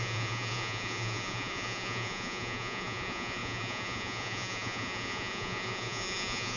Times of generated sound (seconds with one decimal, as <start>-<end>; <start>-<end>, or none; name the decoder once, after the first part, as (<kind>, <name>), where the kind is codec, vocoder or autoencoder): 0.0-6.6 (vocoder, Vocos)